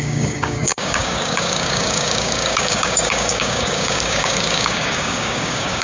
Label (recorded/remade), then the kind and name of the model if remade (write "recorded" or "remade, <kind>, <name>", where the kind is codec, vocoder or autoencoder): remade, codec, DAC